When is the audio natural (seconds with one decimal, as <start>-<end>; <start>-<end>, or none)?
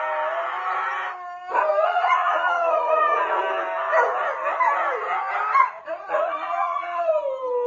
0.0-1.7; 3.4-5.6; 7.1-7.7